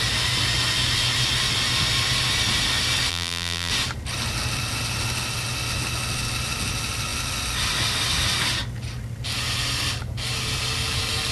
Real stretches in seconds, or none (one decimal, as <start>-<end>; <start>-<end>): 0.0-3.1; 3.7-11.3